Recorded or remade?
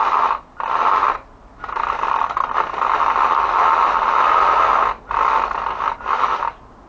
recorded